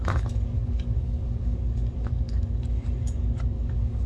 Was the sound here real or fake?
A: fake